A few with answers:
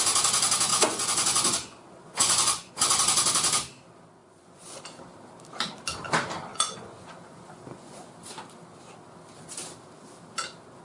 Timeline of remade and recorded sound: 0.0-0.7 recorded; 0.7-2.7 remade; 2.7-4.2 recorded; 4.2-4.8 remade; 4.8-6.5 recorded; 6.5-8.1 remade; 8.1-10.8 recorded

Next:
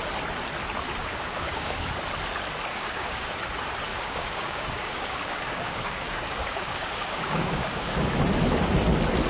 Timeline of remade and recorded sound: 0.0-1.0 recorded; 1.0-2.0 remade; 2.0-2.7 recorded; 2.7-3.3 remade; 3.3-3.9 recorded; 3.9-8.2 remade; 8.2-9.3 recorded